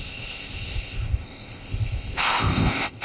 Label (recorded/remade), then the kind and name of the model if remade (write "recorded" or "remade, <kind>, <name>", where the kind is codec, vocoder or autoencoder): remade, codec, ZipCodec